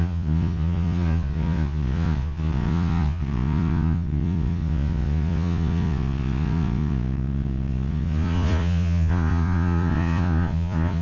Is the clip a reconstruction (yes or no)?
yes